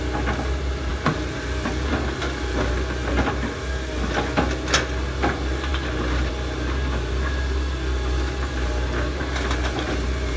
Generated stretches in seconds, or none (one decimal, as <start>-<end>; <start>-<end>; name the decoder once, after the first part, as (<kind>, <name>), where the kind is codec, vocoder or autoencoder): none